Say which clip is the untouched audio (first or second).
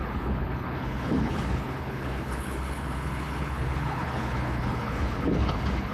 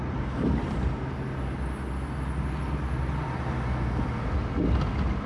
second